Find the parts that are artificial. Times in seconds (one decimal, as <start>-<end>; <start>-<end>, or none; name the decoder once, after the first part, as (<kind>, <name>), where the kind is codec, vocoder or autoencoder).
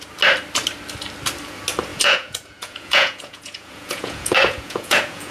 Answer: 1.9-5.3 (vocoder, Vocos)